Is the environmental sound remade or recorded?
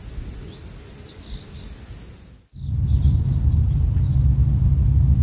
recorded